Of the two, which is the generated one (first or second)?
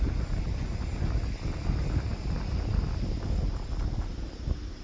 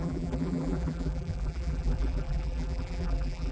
second